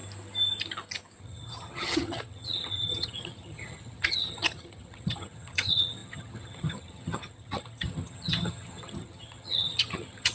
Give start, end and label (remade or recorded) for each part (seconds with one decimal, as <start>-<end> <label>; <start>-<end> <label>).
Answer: 0.0-1.2 recorded; 1.2-10.3 remade